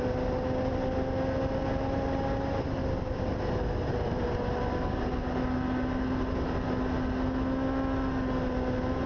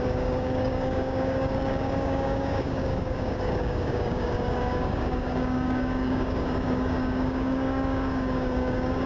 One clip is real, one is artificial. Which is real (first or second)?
first